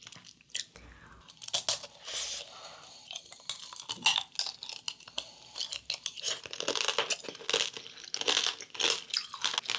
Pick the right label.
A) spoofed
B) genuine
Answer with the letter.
B